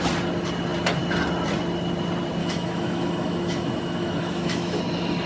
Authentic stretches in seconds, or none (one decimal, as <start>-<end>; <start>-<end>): 0.0-2.4; 4.8-5.3